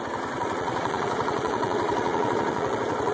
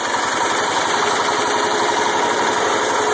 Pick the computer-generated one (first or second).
first